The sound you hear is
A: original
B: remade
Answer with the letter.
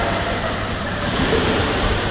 B